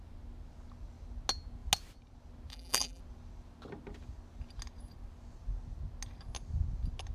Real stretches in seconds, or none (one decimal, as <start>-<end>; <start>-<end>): 0.0-2.5; 3.0-7.1